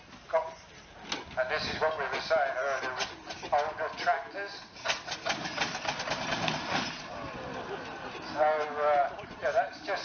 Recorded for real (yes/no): yes